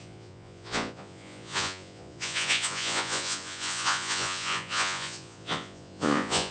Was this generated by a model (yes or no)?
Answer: yes